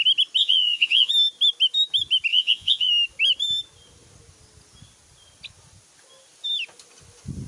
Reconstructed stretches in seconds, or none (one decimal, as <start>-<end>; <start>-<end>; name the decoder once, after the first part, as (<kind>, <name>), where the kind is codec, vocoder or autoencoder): 0.4-1.1 (vocoder, Vocos); 2.3-2.9